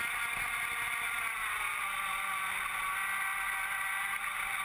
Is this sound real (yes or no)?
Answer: yes